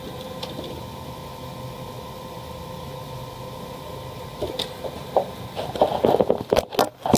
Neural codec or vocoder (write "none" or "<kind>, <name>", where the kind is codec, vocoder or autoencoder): none